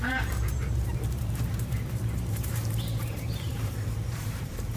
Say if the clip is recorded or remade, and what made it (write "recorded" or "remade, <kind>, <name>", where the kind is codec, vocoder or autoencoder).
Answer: remade, vocoder, BigVGAN v2